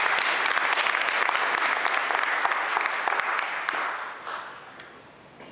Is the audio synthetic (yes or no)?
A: no